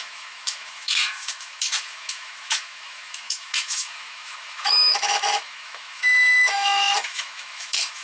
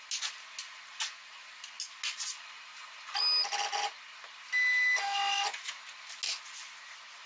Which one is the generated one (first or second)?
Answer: first